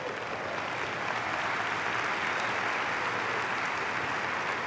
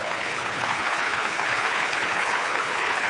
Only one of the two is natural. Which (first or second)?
first